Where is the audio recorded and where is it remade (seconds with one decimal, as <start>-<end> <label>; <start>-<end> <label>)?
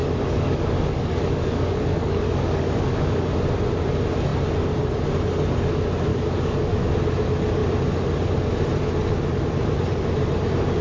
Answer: 0.0-3.3 remade; 3.3-6.1 recorded; 6.1-6.9 remade; 6.9-10.8 recorded